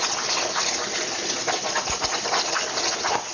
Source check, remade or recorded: recorded